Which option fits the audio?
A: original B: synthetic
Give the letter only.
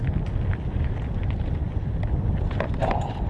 A